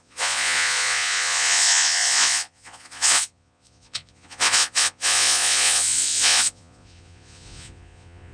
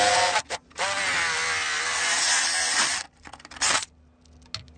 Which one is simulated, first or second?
first